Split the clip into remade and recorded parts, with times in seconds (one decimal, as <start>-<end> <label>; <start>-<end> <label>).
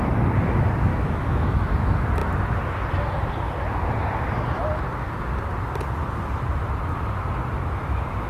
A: 0.0-0.9 recorded; 0.9-1.7 remade; 1.7-8.3 recorded